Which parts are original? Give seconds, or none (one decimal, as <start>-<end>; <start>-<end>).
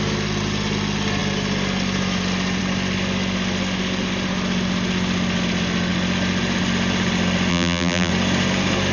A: 0.0-7.5; 8.1-8.9